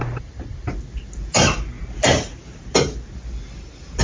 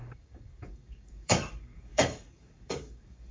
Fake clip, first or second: second